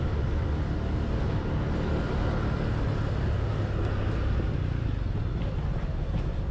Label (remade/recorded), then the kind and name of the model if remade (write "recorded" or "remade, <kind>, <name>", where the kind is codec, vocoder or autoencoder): recorded